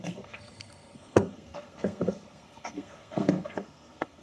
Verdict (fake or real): fake